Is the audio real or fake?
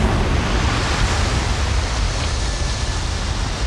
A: real